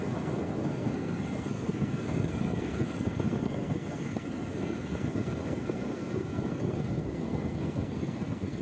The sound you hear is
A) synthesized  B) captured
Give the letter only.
A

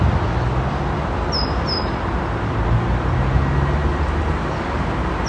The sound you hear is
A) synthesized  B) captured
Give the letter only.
B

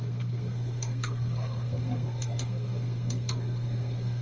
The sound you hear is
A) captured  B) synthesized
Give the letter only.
B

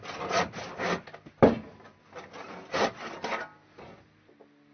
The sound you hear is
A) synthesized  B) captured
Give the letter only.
B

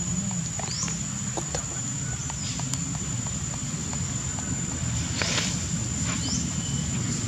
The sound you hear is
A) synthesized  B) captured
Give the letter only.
B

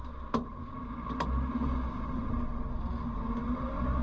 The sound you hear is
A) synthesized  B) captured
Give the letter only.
B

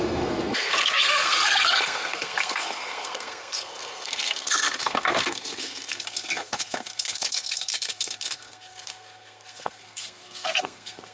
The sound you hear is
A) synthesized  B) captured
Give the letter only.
A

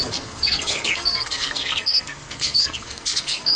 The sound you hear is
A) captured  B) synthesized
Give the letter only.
B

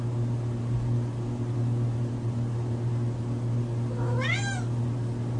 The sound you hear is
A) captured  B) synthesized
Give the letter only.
A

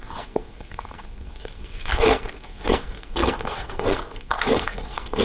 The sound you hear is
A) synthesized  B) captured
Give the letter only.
A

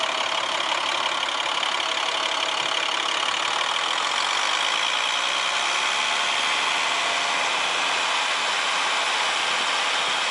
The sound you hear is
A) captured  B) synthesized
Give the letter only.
A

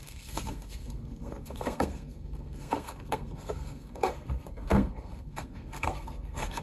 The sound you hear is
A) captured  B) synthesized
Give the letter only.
B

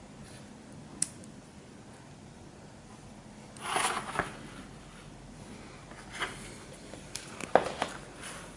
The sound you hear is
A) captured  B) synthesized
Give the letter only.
A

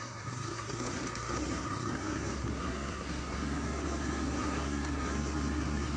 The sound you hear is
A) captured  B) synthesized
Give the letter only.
B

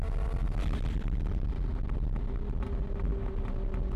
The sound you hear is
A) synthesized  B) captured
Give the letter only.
B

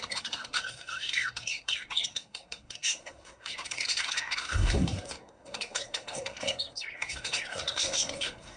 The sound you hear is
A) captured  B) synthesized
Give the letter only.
B